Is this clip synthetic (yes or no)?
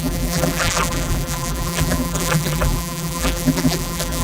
yes